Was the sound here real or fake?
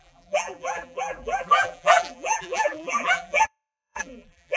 fake